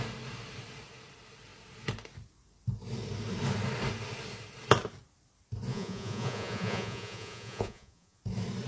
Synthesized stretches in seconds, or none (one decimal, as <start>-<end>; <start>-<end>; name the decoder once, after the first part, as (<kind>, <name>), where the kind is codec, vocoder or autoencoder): 5.7-8.2 (vocoder, Vocos)